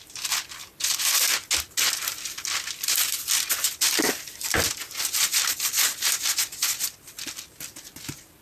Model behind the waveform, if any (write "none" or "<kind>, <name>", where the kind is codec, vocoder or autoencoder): none